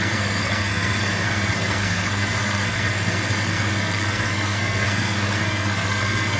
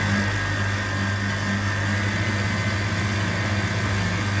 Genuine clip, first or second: second